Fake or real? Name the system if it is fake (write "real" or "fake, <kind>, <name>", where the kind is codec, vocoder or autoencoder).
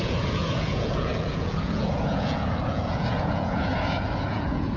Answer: fake, vocoder, Vocos